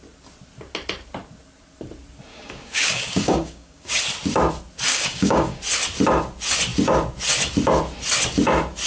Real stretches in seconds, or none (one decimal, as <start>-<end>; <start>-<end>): 0.0-2.3; 4.0-4.9; 5.6-8.9